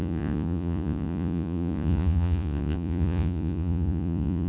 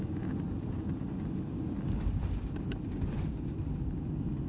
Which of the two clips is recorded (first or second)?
second